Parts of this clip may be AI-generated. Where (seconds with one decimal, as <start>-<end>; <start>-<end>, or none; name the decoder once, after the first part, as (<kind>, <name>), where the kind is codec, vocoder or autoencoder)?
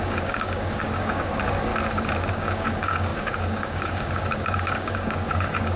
0.0-1.7 (codec, DAC); 2.3-5.8